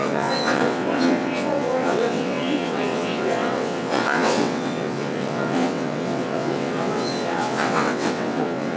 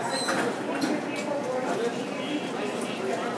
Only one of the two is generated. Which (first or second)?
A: first